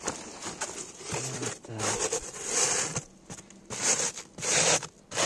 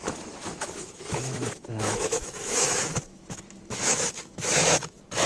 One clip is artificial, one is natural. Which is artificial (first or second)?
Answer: second